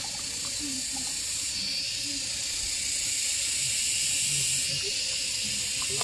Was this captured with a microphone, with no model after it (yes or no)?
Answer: yes